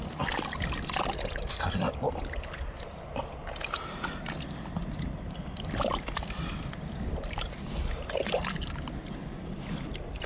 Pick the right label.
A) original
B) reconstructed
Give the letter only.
A